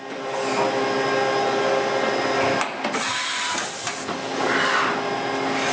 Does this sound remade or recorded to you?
recorded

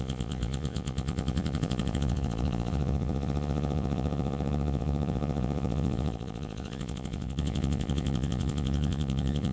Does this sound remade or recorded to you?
remade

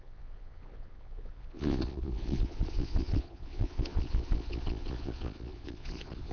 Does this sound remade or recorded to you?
remade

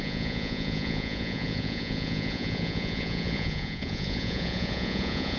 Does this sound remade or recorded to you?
remade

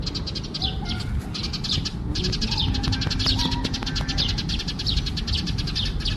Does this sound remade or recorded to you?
recorded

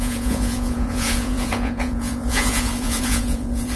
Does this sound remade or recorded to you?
remade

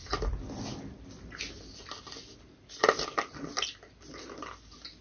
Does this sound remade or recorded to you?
recorded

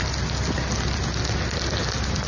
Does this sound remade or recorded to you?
recorded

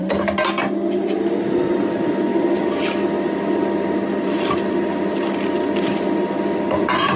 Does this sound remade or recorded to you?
recorded